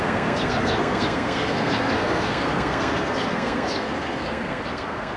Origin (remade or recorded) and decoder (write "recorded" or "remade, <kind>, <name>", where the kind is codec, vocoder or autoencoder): remade, codec, SNAC